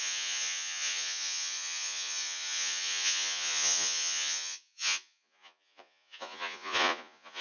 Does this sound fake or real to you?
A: fake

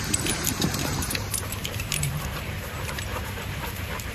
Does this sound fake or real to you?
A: fake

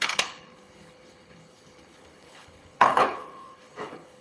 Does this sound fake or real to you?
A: fake